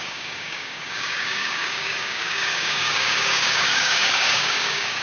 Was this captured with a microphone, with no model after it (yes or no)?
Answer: no